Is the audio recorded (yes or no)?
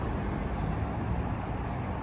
yes